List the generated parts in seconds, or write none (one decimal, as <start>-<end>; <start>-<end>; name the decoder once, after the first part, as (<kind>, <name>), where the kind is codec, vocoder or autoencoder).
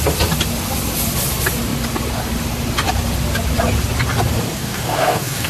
4.6-5.5 (codec, DAC)